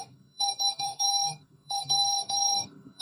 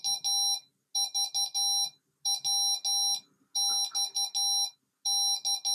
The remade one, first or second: first